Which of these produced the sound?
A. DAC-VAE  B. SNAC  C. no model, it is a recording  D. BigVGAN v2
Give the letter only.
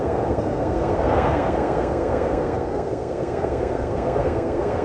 B